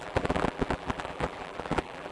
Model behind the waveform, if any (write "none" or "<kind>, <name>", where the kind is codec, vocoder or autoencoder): vocoder, BigVGAN v2